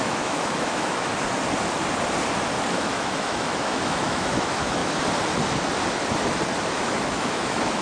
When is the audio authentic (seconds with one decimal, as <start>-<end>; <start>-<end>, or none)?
1.1-2.7; 4.8-6.7